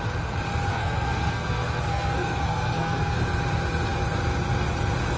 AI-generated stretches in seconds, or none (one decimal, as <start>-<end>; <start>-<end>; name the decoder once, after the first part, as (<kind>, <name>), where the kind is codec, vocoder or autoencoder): 0.7-3.2 (codec, SNAC)